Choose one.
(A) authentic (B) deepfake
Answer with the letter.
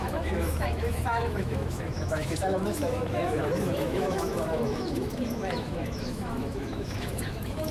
B